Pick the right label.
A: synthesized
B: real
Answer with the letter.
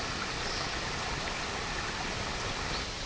B